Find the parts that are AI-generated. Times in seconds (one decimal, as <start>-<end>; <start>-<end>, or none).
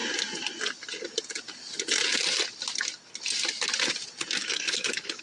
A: 4.4-5.2